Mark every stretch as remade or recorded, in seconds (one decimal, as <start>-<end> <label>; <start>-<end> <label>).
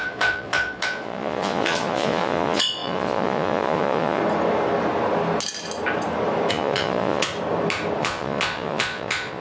0.0-4.2 remade; 4.2-6.5 recorded; 6.5-7.3 remade; 7.3-8.0 recorded; 8.0-9.4 remade